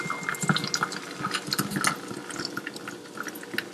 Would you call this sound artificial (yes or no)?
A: no